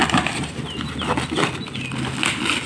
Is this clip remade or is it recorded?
recorded